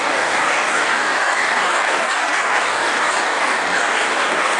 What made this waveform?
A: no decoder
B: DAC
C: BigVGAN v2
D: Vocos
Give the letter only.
B